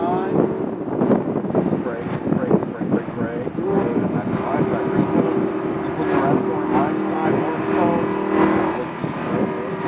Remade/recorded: recorded